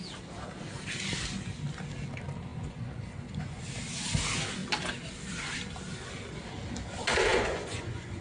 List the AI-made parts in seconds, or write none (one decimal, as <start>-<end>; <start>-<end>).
2.5-3.6; 7.3-8.2